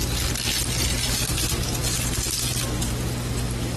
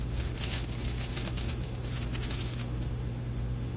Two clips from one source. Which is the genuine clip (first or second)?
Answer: first